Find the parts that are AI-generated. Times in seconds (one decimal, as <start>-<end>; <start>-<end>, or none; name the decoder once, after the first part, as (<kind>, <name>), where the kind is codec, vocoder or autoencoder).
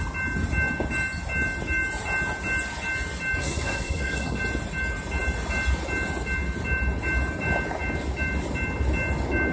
3.4-4.4 (codec, SNAC)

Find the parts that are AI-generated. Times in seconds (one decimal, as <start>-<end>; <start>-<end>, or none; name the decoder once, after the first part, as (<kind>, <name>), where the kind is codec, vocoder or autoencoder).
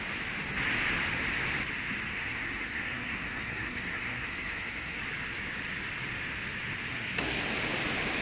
2.1-5.0 (codec, SNAC); 6.9-7.4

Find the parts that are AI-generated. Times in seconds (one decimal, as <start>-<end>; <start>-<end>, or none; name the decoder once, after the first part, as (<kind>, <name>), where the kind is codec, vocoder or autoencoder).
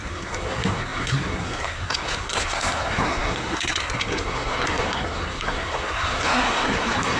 0.0-7.2 (codec, SNAC)